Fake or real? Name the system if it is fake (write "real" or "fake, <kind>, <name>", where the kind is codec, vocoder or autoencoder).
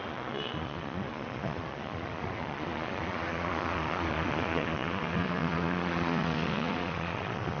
fake, vocoder, Vocos